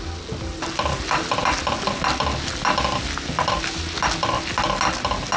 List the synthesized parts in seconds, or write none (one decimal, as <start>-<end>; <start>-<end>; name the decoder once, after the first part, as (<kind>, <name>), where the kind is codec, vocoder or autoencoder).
none